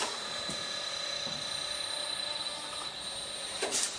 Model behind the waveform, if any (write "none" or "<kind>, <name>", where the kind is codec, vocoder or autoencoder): none